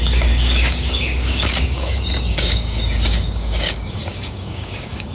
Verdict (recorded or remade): remade